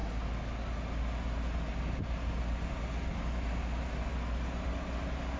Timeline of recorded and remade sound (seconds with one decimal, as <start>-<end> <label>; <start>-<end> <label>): 0.0-5.4 recorded